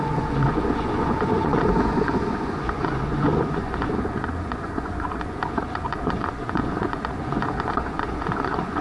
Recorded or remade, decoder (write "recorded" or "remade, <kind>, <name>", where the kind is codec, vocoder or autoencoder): remade, vocoder, Vocos